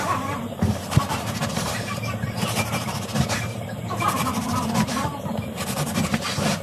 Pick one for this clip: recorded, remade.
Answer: remade